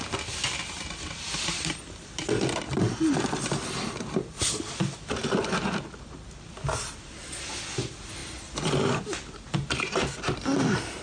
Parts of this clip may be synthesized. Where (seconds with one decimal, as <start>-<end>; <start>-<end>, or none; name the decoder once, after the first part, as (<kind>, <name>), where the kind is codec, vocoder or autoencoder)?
none